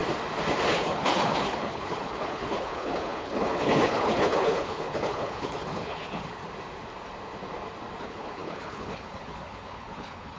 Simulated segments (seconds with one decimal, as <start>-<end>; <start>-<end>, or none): 0.7-6.4; 8.0-10.4